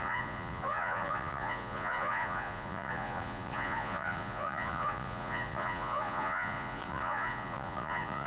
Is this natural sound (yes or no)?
no